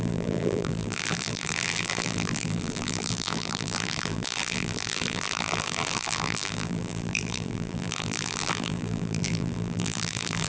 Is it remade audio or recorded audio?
remade